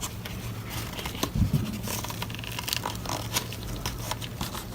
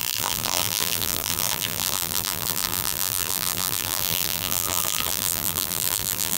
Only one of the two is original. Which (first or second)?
first